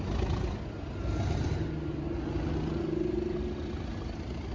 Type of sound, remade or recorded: recorded